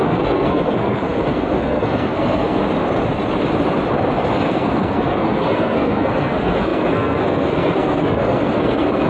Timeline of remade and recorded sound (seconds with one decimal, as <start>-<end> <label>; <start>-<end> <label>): 0.0-2.6 remade; 2.6-4.2 recorded; 4.2-9.1 remade